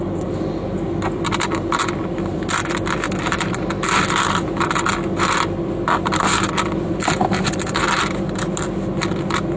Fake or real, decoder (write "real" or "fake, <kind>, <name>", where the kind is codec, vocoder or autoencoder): real